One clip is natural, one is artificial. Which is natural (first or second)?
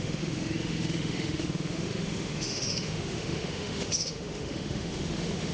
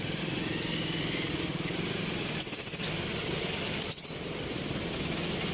second